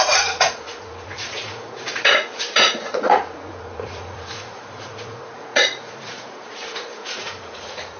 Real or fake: fake